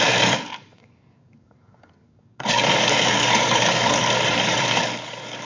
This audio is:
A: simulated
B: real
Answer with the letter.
A